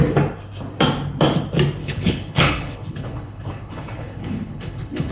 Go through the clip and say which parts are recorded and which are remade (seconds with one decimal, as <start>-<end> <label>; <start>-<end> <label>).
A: 0.0-1.8 recorded; 1.8-5.1 remade